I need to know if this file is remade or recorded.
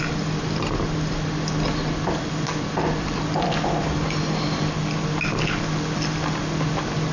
recorded